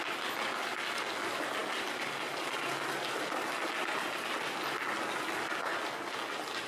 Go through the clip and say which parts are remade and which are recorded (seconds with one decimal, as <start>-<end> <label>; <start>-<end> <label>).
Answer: 0.0-6.7 recorded